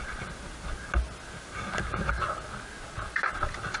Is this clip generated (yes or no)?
no